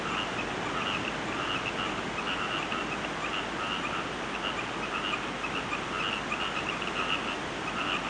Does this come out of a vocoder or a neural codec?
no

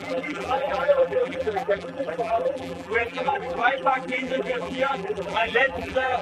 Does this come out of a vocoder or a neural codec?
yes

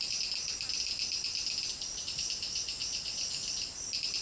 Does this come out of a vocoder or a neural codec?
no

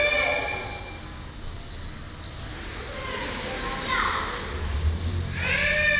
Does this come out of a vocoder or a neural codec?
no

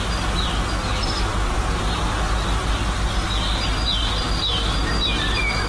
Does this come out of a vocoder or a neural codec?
no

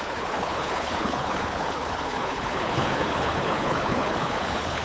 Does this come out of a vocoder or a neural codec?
yes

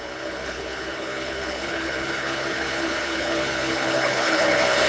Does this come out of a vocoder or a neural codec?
yes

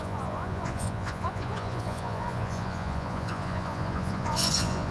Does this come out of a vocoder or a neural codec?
yes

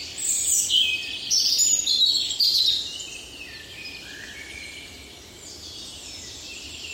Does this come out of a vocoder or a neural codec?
no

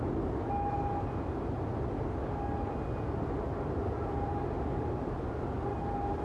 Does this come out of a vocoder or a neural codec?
no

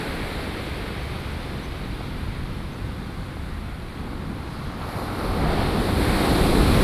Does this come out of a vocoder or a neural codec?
no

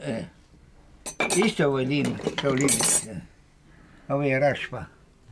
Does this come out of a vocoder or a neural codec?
no